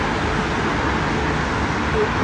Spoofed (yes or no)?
no